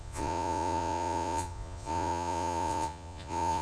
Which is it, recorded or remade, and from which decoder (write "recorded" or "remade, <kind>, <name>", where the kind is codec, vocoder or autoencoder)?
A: remade, vocoder, Vocos